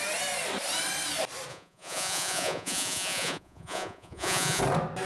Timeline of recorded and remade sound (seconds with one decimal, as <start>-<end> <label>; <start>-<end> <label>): 0.0-1.5 recorded; 1.5-4.6 remade; 4.6-5.1 recorded